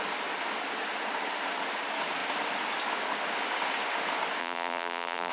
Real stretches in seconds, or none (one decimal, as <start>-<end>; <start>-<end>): 0.0-4.4